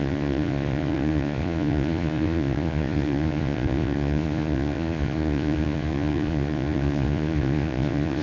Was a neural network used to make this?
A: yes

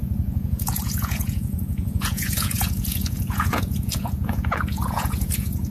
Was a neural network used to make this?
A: yes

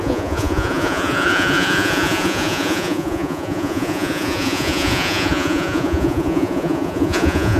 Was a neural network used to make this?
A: yes